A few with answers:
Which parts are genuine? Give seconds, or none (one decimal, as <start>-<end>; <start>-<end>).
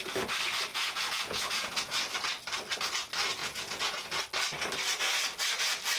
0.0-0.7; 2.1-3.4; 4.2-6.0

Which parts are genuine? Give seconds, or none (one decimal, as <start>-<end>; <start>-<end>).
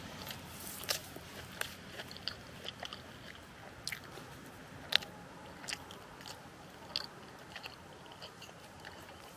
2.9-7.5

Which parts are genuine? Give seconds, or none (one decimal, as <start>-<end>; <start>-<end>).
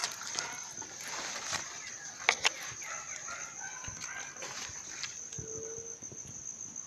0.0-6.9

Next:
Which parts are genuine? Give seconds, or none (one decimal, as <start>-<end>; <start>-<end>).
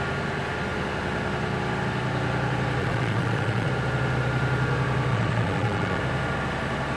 0.0-2.8; 3.7-5.1; 6.0-7.0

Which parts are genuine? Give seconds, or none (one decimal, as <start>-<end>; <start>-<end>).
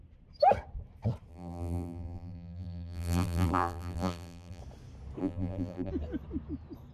0.0-1.3; 4.6-5.2; 5.9-6.9